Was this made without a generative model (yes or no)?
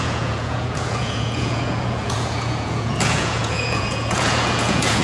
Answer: no